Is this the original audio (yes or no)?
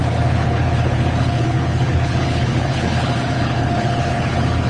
no